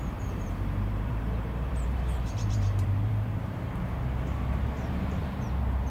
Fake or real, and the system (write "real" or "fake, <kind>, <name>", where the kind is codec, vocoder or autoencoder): fake, vocoder, BigVGAN v2